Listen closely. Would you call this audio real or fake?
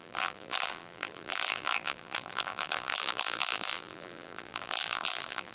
fake